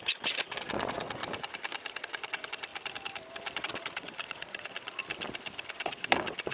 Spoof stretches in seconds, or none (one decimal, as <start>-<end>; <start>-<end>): 0.0-1.2; 2.0-2.7; 3.6-5.0; 5.7-6.5